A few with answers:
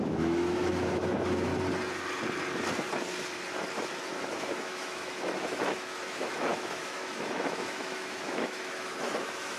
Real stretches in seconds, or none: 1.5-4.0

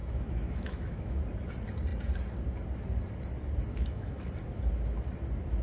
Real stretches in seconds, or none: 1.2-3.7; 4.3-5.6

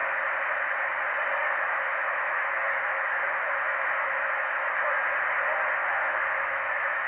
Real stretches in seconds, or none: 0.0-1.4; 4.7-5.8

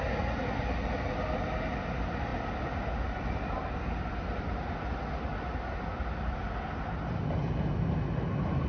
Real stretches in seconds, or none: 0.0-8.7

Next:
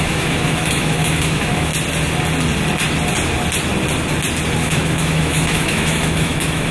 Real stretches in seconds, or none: 1.7-4.6

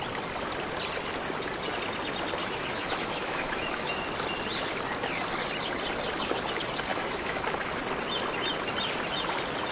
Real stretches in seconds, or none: 0.0-2.4; 4.1-6.9; 7.8-9.7